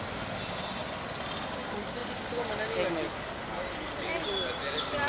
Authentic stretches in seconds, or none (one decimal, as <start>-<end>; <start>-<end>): 0.0-5.1